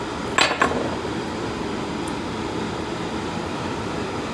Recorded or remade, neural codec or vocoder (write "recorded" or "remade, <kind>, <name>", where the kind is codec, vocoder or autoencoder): recorded